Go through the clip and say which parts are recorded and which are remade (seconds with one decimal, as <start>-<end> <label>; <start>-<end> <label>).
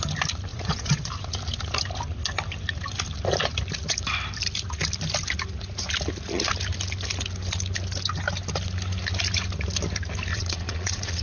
0.0-0.5 recorded; 0.5-1.1 remade; 1.1-10.3 recorded; 10.3-11.2 remade